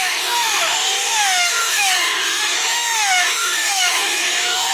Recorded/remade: remade